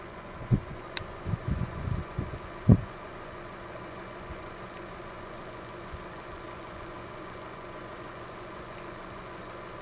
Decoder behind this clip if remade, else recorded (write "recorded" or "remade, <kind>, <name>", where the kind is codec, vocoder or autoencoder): remade, vocoder, Vocos